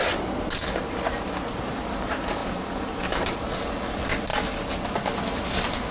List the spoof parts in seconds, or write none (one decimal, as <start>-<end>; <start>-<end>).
none